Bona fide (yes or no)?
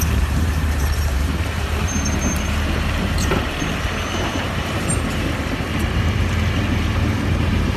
no